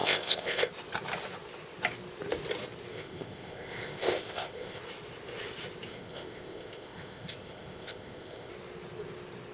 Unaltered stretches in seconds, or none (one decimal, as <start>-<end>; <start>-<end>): 0.7-2.9; 4.8-5.9; 8.5-9.5